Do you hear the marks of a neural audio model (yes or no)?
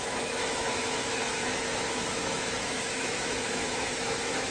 yes